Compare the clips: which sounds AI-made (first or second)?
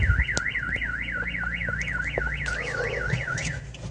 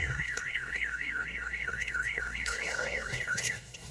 second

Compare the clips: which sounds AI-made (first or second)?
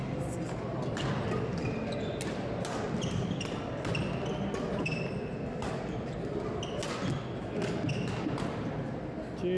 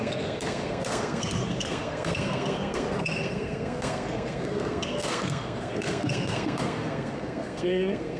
second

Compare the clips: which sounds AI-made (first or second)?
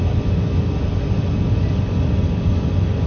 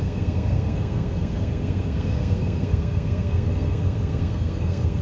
second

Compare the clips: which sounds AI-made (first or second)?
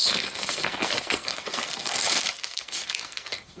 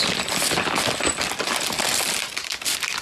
first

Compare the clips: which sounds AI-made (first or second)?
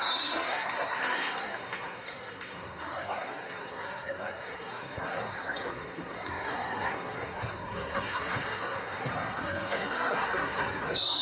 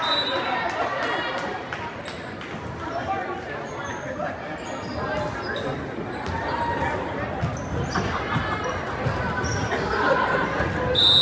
first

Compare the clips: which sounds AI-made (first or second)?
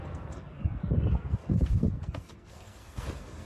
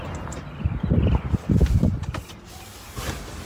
first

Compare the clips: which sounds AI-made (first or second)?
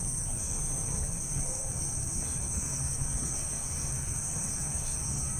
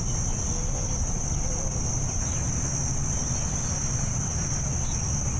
first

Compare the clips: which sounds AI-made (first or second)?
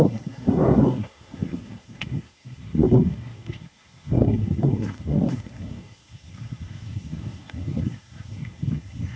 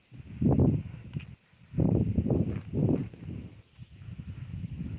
first